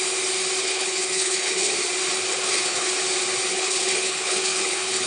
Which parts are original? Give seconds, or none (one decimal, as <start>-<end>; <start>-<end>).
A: 0.0-0.6; 1.7-2.3; 2.9-3.5